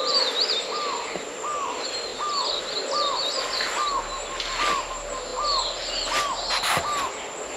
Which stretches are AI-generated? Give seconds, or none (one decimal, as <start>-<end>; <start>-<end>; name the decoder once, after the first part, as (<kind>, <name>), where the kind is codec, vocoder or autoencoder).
none